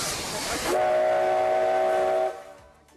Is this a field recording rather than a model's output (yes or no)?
yes